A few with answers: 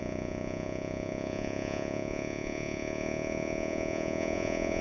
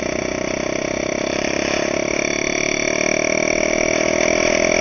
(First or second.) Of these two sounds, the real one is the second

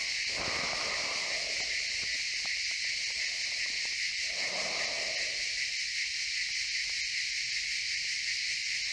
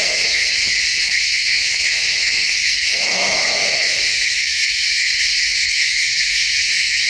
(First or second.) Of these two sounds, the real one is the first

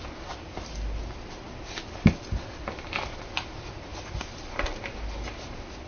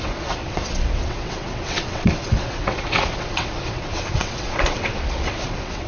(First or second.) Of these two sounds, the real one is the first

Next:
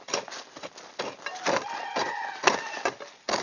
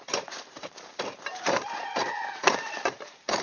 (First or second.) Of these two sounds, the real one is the first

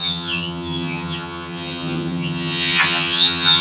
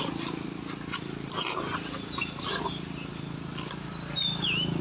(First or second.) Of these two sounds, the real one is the second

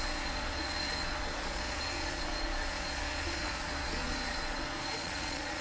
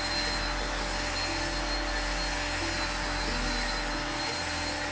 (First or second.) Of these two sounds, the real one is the second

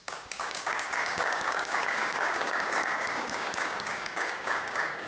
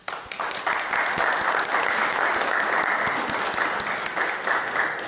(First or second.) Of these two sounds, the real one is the second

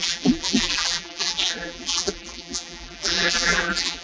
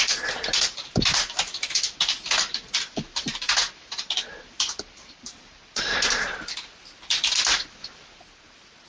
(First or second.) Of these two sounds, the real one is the second